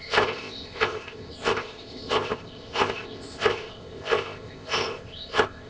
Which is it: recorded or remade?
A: remade